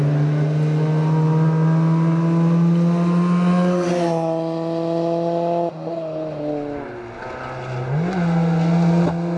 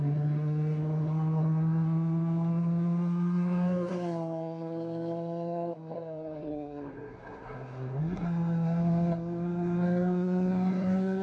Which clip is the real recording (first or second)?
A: first